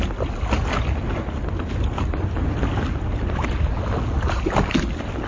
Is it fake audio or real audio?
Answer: real